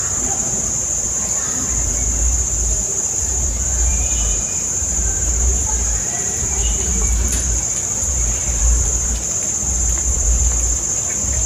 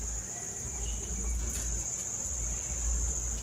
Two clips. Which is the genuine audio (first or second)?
second